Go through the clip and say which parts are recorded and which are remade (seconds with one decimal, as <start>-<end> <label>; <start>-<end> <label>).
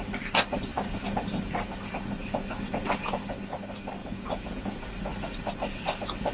0.0-4.0 recorded; 4.0-4.6 remade; 4.6-6.3 recorded